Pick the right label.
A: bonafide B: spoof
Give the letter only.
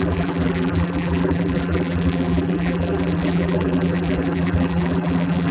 B